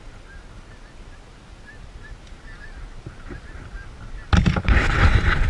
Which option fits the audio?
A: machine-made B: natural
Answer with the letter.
B